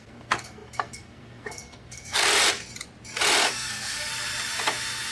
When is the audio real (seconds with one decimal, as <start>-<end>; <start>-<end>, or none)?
2.2-3.5; 4.1-5.1